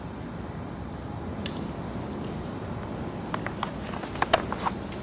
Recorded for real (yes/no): yes